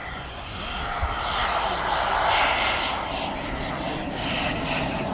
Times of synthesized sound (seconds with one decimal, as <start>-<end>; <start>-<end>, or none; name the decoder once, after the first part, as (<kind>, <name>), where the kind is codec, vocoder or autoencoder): 0.0-0.6 (vocoder, Vocos)